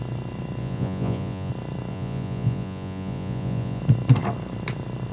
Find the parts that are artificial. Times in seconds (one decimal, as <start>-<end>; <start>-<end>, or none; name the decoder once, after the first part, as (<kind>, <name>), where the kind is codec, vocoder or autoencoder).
0.6-1.5 (vocoder, Vocos); 1.9-3.8